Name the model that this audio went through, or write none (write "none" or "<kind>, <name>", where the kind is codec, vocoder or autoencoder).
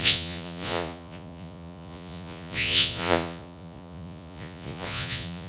vocoder, Vocos